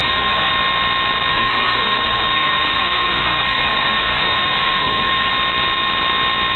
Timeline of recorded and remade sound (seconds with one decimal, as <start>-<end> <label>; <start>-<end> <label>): 0.0-0.5 remade; 0.5-1.3 recorded; 1.3-5.3 remade; 5.3-6.6 recorded